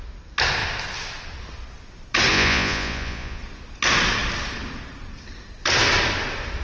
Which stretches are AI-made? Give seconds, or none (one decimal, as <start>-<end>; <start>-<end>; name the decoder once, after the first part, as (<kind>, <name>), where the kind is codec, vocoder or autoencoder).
2.3-3.4 (vocoder, Vocos)